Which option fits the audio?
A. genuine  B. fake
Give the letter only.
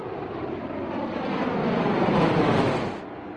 A